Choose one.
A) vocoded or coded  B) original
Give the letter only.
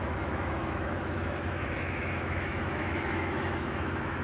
A